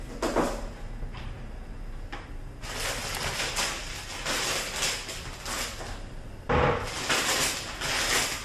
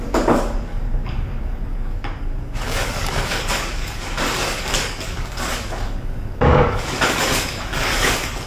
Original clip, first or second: first